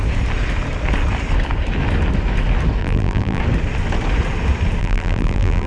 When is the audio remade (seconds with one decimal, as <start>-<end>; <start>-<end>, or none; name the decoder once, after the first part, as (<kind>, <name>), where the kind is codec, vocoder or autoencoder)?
2.8-3.4 (vocoder, BigVGAN v2); 4.8-5.7